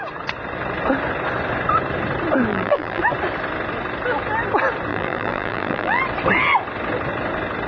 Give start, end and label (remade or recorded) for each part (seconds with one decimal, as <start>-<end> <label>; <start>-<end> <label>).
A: 0.0-2.5 recorded; 2.5-3.0 remade; 3.0-4.9 recorded; 4.9-6.0 remade; 6.0-7.7 recorded

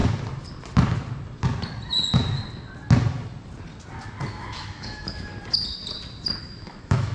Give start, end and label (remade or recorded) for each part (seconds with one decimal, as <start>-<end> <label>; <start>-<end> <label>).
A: 0.0-4.3 recorded; 4.3-5.3 remade; 5.3-6.4 recorded; 6.4-7.1 remade

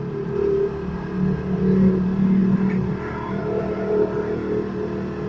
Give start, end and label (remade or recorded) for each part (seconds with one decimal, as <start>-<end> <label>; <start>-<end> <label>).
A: 0.0-5.3 recorded

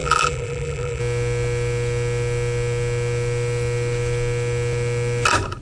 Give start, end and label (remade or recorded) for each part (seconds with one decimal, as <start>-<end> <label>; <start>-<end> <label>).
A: 0.0-1.0 remade; 1.0-5.6 recorded

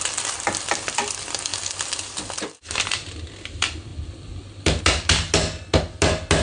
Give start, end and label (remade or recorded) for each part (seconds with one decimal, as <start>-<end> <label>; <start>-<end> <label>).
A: 0.0-6.4 recorded

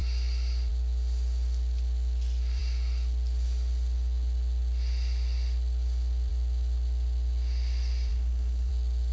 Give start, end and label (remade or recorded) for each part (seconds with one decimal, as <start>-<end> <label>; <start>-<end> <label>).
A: 0.0-8.1 recorded; 8.1-8.7 remade; 8.7-9.1 recorded

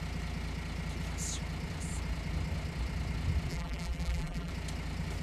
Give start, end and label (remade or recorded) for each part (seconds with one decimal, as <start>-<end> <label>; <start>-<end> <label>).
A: 0.0-3.5 recorded; 3.5-4.5 remade; 4.5-5.2 recorded